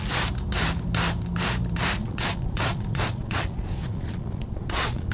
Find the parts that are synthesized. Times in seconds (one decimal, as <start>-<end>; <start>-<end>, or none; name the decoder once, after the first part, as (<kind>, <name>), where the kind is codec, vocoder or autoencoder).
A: 2.0-5.1 (vocoder, Vocos)